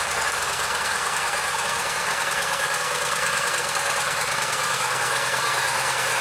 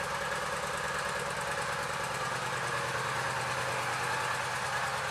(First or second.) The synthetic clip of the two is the first